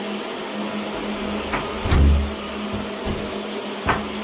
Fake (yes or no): no